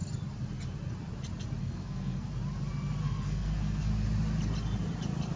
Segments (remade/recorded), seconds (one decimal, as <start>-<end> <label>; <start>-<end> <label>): 0.0-1.6 recorded; 1.6-2.3 remade; 2.3-3.0 recorded; 3.0-3.9 remade; 3.9-5.4 recorded